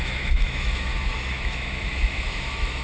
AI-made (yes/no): yes